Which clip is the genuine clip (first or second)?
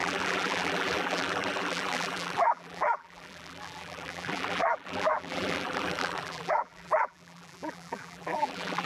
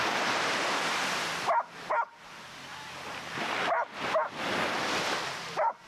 second